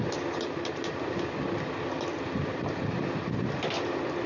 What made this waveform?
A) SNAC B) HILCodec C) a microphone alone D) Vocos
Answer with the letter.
C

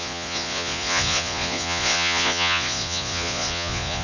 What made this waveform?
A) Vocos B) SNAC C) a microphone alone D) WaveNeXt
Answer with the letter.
A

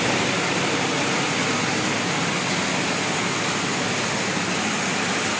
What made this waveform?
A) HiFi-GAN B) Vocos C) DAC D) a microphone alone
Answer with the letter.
D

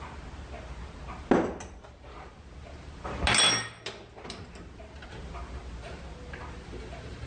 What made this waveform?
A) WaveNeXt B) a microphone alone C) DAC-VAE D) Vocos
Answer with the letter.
B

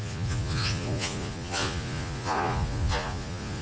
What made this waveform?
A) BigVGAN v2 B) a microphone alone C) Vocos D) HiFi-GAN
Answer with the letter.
C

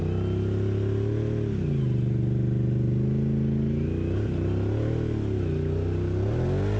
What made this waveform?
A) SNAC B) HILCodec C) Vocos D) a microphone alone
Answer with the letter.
D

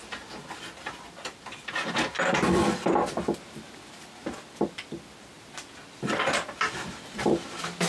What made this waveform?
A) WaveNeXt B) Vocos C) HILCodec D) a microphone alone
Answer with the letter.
D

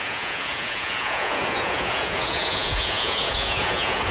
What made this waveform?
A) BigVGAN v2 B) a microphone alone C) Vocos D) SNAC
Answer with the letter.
C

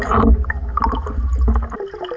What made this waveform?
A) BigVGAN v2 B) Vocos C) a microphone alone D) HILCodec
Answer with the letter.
C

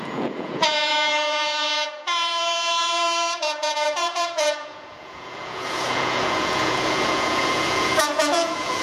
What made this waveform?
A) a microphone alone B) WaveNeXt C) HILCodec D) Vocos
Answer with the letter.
D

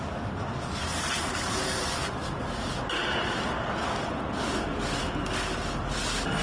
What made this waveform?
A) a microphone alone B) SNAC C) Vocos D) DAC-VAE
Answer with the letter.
A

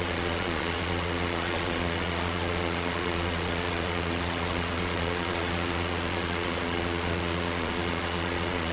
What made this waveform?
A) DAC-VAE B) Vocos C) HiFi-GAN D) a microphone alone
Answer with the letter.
B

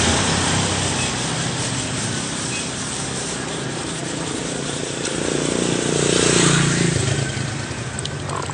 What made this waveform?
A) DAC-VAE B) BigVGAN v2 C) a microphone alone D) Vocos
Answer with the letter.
C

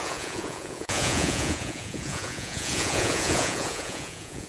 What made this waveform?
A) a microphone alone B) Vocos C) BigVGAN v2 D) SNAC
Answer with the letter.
B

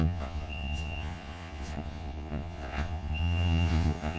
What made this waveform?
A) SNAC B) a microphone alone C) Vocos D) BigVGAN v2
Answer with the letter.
C